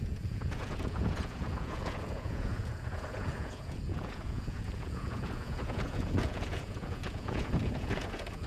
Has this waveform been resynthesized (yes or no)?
yes